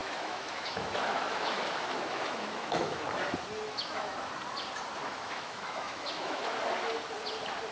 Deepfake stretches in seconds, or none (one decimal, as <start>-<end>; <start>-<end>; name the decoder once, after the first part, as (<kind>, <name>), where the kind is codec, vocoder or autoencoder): 0.0-3.0 (autoencoder, DAC-VAE); 3.7-4.3; 5.1-6.6